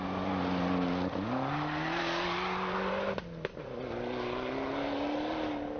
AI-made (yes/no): no